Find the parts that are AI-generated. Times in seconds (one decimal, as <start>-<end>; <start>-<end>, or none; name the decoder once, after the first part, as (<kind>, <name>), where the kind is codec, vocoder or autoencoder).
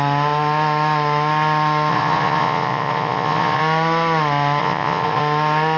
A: 1.9-3.6 (vocoder, Vocos); 4.6-5.2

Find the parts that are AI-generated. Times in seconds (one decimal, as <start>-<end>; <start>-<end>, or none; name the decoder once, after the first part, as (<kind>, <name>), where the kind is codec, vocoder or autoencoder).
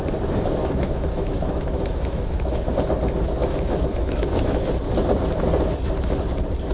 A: 0.6-2.7 (autoencoder, DAC-VAE); 3.4-4.7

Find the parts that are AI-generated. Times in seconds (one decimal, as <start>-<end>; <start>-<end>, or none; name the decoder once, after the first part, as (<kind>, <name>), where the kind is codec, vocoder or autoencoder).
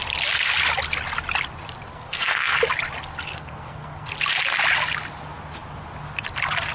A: 1.9-2.6 (codec, SNAC); 3.3-4.1